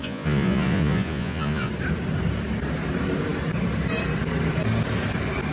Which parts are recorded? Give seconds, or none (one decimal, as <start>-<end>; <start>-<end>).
1.7-5.5